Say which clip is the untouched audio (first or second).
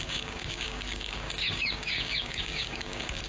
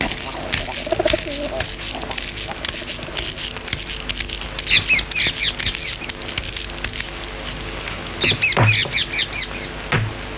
second